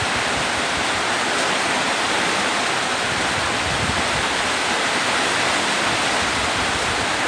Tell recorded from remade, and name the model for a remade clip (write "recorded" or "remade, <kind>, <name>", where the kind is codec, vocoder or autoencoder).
recorded